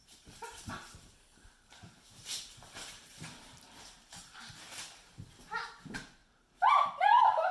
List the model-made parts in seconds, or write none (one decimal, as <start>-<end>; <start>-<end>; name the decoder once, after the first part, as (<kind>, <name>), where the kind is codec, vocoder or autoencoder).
0.0-4.5 (vocoder, BigVGAN v2)